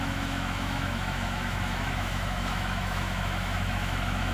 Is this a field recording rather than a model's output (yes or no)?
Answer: no